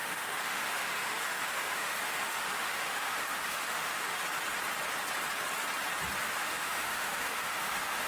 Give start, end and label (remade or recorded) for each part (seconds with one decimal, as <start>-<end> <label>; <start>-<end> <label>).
0.0-4.2 remade; 4.2-6.2 recorded; 6.2-8.1 remade